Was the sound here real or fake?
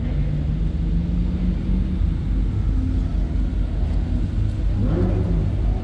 real